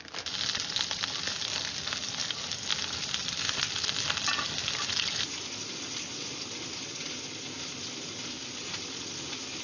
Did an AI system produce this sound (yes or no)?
no